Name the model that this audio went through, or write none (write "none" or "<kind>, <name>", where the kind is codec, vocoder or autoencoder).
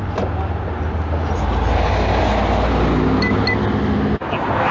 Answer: none